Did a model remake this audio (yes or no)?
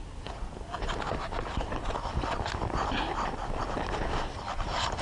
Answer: no